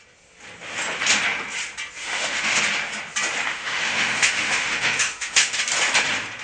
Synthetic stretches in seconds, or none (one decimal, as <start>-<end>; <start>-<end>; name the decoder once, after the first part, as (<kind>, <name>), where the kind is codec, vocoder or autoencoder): 2.0-2.6 (autoencoder, DAC-VAE); 3.5-5.6

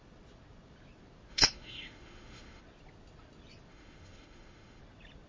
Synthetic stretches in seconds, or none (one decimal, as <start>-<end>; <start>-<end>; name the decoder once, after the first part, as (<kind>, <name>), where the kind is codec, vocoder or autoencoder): 1.3-2.6 (autoencoder, DAC-VAE); 3.7-4.8